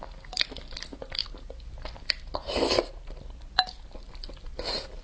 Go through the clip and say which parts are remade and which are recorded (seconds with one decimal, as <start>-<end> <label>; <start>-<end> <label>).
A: 0.0-5.0 recorded